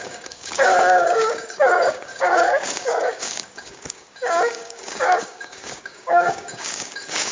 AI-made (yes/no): yes